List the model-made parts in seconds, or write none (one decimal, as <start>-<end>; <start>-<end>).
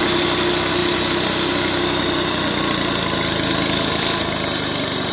0.8-2.6